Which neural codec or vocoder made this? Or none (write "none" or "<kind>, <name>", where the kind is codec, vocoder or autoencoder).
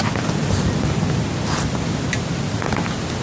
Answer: none